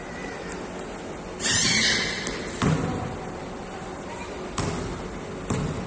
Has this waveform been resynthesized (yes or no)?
no